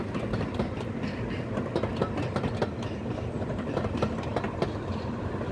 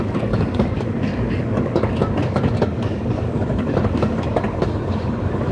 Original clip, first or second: first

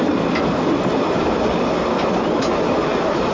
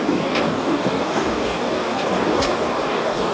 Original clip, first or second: first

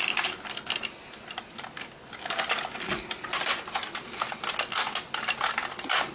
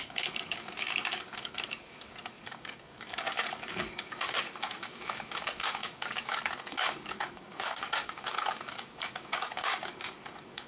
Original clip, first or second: first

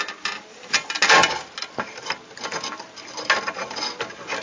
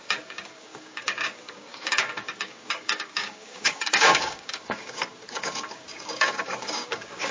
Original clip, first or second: first